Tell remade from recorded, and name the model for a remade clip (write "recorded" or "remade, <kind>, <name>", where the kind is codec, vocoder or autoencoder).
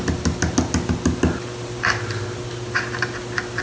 recorded